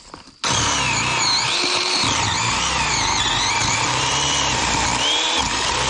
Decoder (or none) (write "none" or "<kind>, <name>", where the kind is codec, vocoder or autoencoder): none